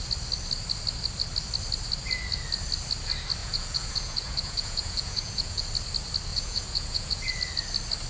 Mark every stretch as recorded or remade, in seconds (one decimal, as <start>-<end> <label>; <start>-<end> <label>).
0.0-3.4 recorded; 3.4-5.6 remade; 5.6-6.3 recorded; 6.3-7.3 remade; 7.3-8.1 recorded